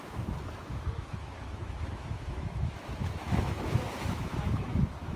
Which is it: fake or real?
fake